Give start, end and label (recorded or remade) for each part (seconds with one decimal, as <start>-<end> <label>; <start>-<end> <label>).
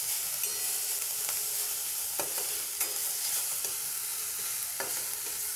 0.0-5.6 recorded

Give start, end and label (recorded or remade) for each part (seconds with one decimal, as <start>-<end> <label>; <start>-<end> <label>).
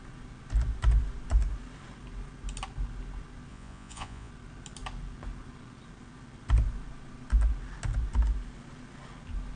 0.0-3.5 recorded; 3.5-4.3 remade; 4.3-9.6 recorded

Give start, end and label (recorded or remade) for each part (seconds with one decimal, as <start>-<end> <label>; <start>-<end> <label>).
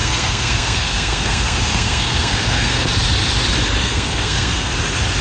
0.0-2.9 remade; 2.9-3.8 recorded; 3.8-4.7 remade; 4.7-5.2 recorded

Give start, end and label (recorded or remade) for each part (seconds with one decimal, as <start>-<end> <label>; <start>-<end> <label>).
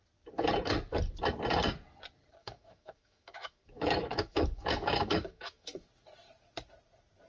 0.0-2.4 recorded; 2.4-5.9 remade; 5.9-7.3 recorded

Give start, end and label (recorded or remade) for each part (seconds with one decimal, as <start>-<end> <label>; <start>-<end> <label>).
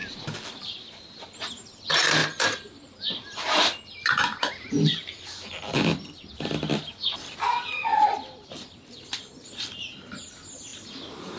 0.0-2.2 recorded; 2.2-6.0 remade; 6.0-10.7 recorded; 10.7-11.4 remade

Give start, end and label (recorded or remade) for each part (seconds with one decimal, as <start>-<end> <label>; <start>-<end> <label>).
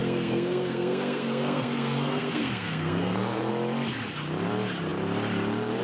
0.0-3.5 remade; 3.5-5.8 recorded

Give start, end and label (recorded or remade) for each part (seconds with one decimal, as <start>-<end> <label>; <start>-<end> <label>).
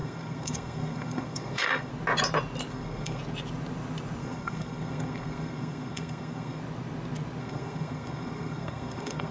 0.0-1.9 remade; 1.9-2.7 recorded; 2.7-3.2 remade; 3.2-4.2 recorded; 4.2-6.6 remade; 6.6-7.4 recorded; 7.4-9.3 remade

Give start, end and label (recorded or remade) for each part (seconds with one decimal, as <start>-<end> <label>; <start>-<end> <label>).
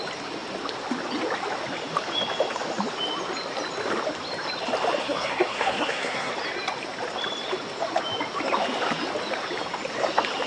0.0-5.0 recorded; 5.0-6.3 remade; 6.3-10.5 recorded